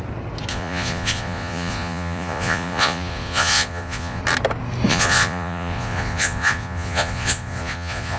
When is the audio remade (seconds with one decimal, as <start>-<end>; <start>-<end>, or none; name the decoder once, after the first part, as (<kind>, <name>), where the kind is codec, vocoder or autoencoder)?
0.5-4.2 (vocoder, Vocos); 4.9-8.2